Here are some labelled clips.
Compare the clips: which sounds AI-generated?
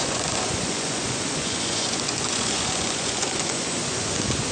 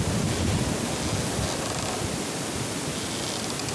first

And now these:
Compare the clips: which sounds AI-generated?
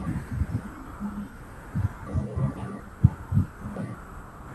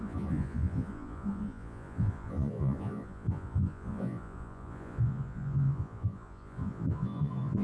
second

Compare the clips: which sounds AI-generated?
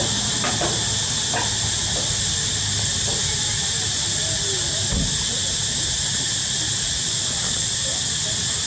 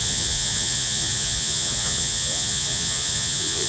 second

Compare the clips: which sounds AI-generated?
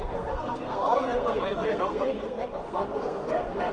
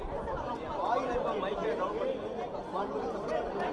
first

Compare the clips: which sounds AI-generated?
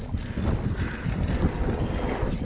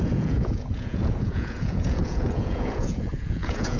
second